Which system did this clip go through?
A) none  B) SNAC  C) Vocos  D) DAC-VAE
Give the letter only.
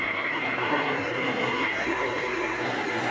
B